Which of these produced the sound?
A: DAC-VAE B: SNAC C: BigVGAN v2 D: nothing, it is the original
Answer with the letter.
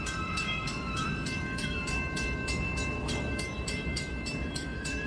A